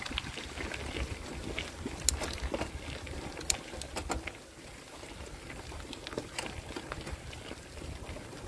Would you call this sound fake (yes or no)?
no